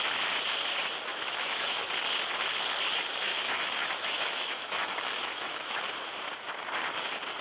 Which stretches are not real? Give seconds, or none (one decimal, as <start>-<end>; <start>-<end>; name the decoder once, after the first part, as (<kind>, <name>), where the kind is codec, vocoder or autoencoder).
1.1-1.9 (autoencoder, DAC-VAE); 3.3-5.8